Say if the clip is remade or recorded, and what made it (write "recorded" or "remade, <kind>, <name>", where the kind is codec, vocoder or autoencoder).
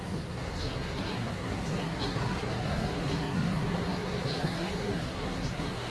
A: remade, codec, SNAC